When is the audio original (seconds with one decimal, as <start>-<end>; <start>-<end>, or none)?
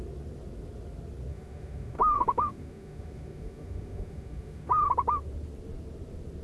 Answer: 0.0-1.3; 4.7-6.4